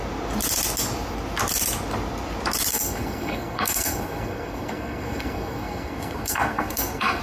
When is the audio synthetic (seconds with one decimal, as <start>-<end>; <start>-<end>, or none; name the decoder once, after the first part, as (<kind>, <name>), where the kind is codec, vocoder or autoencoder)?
2.7-7.2 (codec, SNAC)